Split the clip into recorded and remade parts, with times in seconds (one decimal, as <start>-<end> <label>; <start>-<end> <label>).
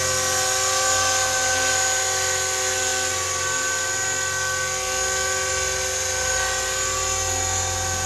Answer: 0.0-8.1 recorded